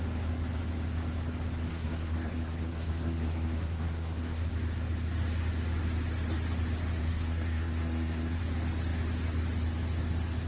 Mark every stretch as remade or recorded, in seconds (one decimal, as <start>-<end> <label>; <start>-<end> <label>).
0.0-1.7 recorded; 1.7-4.5 remade; 4.5-7.0 recorded; 7.0-8.4 remade; 8.4-10.5 recorded